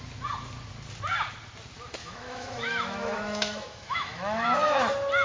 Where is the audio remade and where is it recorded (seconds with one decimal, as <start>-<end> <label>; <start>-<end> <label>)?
0.0-2.0 recorded; 2.0-4.8 remade; 4.8-5.2 recorded